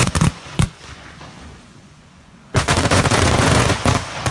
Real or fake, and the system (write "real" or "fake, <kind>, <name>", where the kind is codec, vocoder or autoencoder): fake, vocoder, Vocos